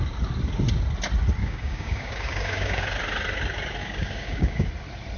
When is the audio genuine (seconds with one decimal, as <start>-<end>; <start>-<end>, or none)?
0.0-1.4; 2.8-3.8; 4.7-5.2